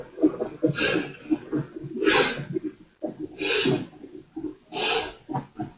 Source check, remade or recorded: recorded